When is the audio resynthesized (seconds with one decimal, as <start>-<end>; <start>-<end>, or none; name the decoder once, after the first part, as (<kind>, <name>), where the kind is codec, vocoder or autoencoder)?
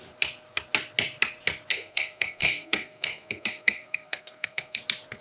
1.7-4.8 (codec, SNAC)